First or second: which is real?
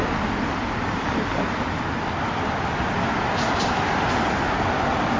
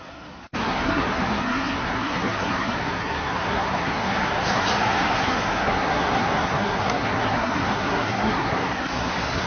first